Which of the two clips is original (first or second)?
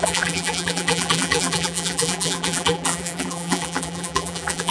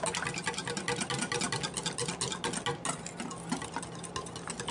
second